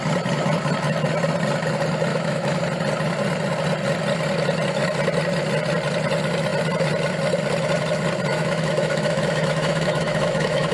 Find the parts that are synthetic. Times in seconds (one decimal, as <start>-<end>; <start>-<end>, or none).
2.1-2.6; 8.3-10.7